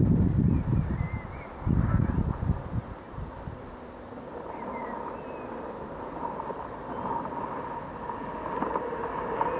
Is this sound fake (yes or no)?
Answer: no